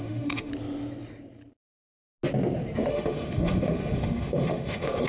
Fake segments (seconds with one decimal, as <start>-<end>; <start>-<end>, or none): 0.0-0.5; 2.9-5.1